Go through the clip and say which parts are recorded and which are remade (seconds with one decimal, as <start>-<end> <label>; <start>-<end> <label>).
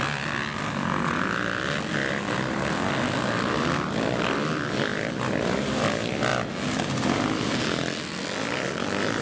0.0-9.2 recorded